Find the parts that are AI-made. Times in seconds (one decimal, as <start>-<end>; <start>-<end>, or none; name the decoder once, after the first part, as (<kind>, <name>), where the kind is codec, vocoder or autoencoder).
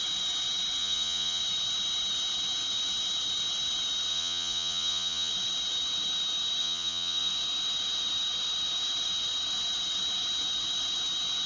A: 0.8-1.4 (vocoder, Vocos); 4.1-5.3; 6.6-7.3